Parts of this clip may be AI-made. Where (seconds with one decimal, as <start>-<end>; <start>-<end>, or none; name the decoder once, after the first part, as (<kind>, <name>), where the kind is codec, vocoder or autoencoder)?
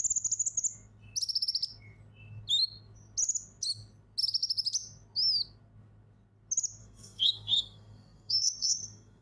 6.8-9.2 (codec, SNAC)